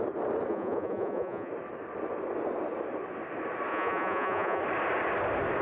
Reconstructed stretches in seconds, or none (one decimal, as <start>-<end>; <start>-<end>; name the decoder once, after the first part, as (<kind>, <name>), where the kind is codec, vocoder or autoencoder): 0.5-1.5 (vocoder, Vocos); 3.7-4.6

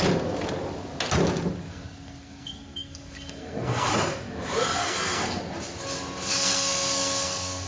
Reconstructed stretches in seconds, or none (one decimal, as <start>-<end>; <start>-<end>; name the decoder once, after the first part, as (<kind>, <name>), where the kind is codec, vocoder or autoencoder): 1.7-3.9 (codec, SNAC); 4.8-5.4; 6.3-7.7